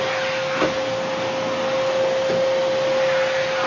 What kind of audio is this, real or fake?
real